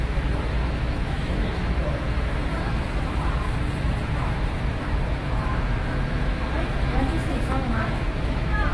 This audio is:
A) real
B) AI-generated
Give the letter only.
B